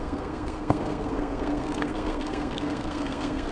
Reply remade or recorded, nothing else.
remade